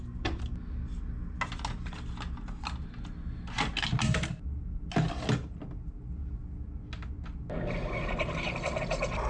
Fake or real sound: real